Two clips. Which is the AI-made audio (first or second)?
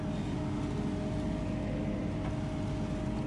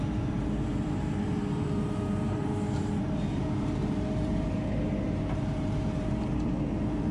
second